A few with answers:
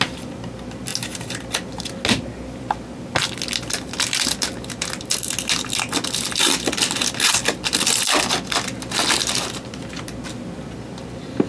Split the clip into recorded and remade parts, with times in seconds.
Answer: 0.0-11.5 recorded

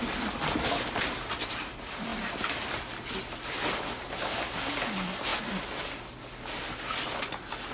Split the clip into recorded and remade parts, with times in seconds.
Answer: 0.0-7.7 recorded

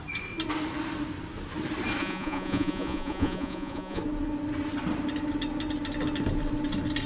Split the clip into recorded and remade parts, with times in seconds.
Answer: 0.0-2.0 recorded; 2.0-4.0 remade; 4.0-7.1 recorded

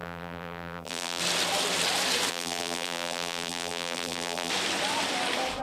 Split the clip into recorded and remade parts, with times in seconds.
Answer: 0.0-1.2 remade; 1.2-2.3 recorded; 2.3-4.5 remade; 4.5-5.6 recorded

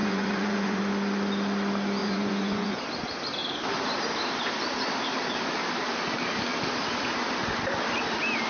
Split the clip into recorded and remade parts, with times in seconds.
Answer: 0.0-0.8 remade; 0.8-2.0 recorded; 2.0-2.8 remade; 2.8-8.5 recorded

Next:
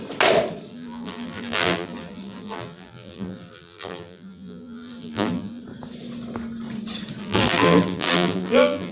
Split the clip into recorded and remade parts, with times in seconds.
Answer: 0.0-0.7 recorded; 0.7-5.6 remade; 5.6-7.2 recorded; 7.2-8.9 remade

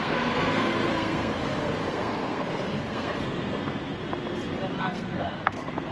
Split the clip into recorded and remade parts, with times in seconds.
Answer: 0.0-4.0 remade; 4.0-4.8 recorded; 4.8-5.9 remade

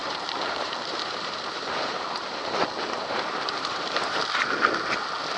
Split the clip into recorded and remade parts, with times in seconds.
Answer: 0.0-2.6 remade; 2.6-3.0 recorded; 3.0-4.2 remade; 4.2-5.4 recorded